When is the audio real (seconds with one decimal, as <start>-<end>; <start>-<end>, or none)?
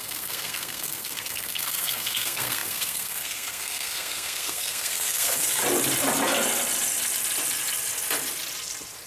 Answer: 5.6-9.1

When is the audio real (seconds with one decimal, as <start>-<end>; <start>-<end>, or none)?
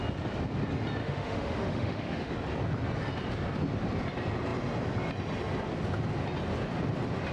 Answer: 0.0-1.0; 2.3-7.3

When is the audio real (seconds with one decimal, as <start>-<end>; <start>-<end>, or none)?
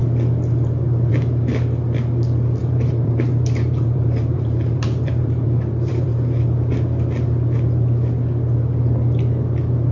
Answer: 0.0-2.6; 6.1-9.9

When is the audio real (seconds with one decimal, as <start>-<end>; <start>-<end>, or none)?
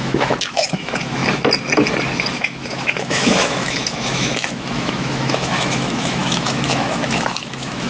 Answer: 1.2-2.3